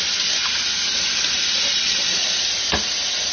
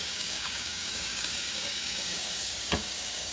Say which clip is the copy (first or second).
second